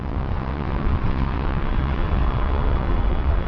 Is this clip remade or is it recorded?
remade